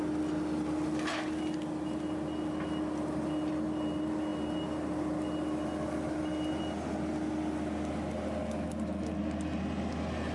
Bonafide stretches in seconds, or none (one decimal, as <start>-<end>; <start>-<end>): 0.0-10.3